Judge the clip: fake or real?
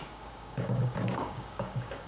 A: fake